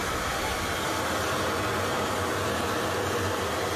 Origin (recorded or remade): recorded